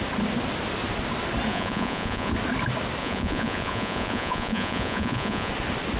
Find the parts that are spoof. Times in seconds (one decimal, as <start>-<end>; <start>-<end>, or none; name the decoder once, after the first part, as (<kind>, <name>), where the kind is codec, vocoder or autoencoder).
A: 1.5-2.3 (vocoder, Vocos); 3.0-5.5